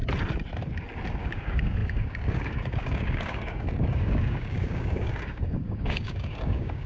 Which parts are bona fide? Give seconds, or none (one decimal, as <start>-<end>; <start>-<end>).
0.0-1.2